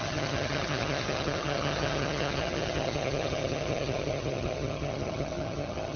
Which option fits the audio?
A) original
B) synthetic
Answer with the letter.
B